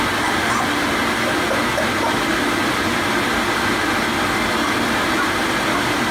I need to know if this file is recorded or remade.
recorded